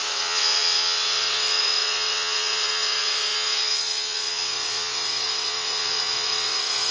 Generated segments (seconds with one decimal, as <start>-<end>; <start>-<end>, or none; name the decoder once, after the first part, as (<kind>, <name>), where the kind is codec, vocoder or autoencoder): 0.0-6.9 (vocoder, WaveNeXt)

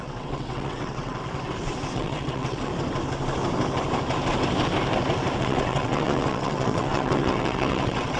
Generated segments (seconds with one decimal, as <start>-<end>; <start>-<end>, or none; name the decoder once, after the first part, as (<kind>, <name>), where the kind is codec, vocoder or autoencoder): 0.0-1.2 (vocoder, WaveNeXt); 1.9-2.7; 5.4-8.2

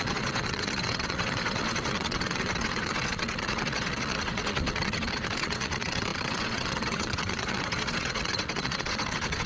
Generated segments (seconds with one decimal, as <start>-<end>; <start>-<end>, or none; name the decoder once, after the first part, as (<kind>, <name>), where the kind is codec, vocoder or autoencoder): 0.0-9.5 (vocoder, WaveNeXt)

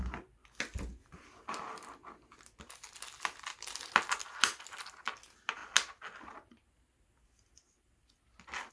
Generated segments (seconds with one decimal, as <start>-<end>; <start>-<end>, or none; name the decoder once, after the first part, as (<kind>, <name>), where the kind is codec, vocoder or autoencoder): none

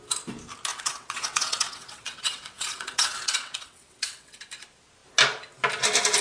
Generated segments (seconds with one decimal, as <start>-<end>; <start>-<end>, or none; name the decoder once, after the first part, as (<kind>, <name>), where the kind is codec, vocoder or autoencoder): 0.7-4.4 (vocoder, WaveNeXt)

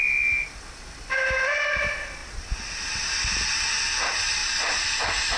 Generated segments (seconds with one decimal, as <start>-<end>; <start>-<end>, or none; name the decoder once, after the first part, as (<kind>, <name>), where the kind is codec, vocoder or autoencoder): none

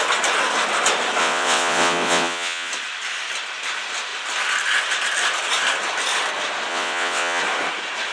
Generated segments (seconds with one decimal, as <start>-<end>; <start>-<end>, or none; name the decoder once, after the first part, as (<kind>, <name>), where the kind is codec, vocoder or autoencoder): 1.2-2.7 (vocoder, WaveNeXt); 6.7-7.4

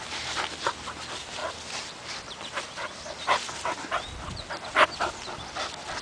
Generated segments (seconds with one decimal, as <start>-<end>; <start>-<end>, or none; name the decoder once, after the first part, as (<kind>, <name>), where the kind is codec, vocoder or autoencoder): none